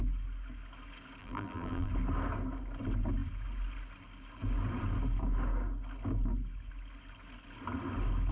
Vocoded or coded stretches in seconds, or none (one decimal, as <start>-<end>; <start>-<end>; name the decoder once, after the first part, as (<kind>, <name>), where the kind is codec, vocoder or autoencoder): 1.2-1.9 (vocoder, BigVGAN v2)